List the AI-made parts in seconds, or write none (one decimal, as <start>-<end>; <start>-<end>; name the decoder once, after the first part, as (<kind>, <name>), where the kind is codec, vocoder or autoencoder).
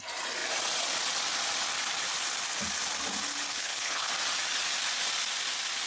3.5-4.1 (codec, HILCodec)